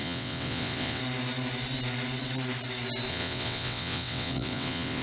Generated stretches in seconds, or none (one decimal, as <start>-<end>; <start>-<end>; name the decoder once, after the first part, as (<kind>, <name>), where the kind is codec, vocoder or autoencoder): 0.0-1.0 (vocoder, WaveNeXt); 3.1-5.0